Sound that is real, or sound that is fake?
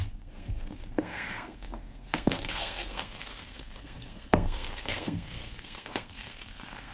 fake